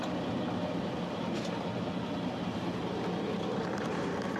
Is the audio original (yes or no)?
yes